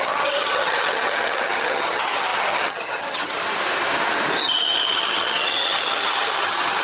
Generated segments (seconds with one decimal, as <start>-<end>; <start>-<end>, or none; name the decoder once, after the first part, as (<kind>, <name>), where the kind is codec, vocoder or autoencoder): 0.0-3.4 (vocoder, HiFi-GAN); 4.4-6.8